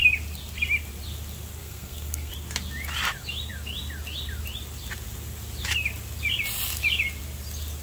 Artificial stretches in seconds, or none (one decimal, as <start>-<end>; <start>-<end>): 1.6-2.3